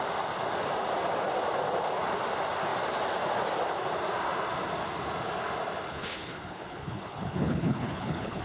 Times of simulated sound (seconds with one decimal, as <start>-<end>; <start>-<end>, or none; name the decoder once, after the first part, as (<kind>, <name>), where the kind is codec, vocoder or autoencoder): 5.9-8.4 (codec, HILCodec)

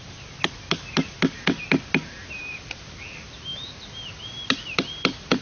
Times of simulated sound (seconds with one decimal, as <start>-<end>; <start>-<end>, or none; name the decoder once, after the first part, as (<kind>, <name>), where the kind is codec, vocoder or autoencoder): none

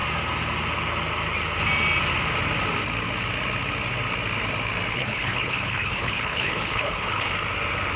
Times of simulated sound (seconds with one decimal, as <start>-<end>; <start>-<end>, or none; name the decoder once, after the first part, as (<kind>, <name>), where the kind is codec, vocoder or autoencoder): 4.9-7.3 (codec, HILCodec)

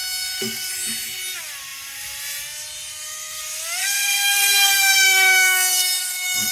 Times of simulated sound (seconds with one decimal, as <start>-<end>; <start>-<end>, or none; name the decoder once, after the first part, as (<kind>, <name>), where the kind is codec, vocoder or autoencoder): 0.0-0.7 (codec, SNAC); 2.9-3.4; 3.8-6.5